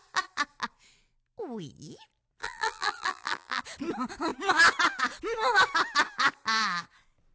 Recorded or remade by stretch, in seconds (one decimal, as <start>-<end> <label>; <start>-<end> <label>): 0.0-2.4 recorded; 2.4-3.6 remade; 3.6-7.3 recorded

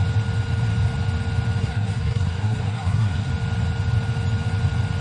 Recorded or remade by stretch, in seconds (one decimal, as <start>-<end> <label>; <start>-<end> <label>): 0.0-1.6 recorded; 1.6-3.3 remade; 3.3-5.0 recorded

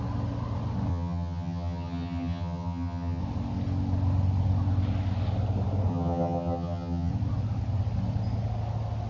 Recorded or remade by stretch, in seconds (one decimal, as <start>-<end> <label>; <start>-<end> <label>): 0.0-0.9 recorded; 0.9-3.2 remade; 3.2-5.9 recorded; 5.9-7.1 remade; 7.1-9.1 recorded

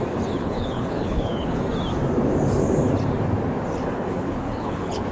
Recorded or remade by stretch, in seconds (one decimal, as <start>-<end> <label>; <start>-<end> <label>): 0.0-0.4 recorded; 0.4-1.6 remade; 1.6-3.8 recorded; 3.8-5.1 remade

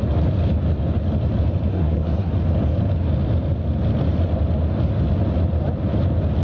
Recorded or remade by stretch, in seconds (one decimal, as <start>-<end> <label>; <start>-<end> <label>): 0.0-1.7 recorded; 1.7-2.3 remade; 2.3-6.4 recorded

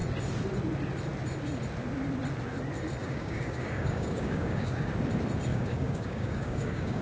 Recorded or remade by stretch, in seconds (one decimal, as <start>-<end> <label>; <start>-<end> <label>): 0.0-3.0 recorded; 3.0-4.9 remade; 4.9-5.5 recorded; 5.5-7.0 remade